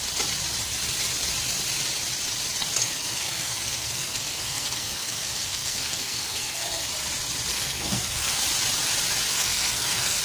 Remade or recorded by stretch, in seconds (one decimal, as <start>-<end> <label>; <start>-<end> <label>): 0.0-2.8 recorded; 2.8-6.9 remade; 6.9-7.5 recorded; 7.5-8.4 remade; 8.4-9.3 recorded; 9.3-10.2 remade